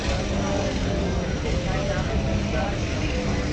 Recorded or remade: recorded